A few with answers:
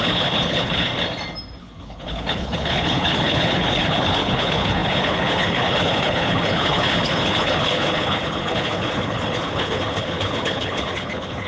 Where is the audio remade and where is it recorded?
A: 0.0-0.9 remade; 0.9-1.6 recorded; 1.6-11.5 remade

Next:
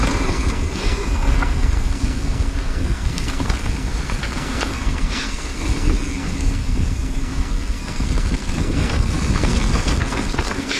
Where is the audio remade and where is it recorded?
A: 0.0-10.8 remade

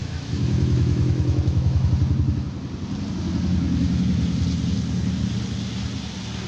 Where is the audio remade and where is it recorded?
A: 0.0-1.9 remade; 1.9-6.5 recorded